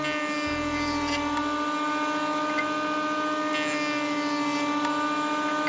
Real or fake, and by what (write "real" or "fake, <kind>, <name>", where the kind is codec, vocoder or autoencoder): real